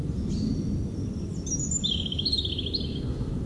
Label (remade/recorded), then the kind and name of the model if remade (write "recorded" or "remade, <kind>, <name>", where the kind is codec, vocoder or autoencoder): recorded